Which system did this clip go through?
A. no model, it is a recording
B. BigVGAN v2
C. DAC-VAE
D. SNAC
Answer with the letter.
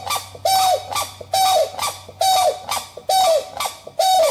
A